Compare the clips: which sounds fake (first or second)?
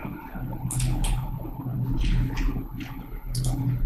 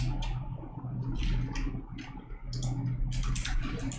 first